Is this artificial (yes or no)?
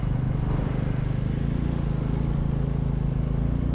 no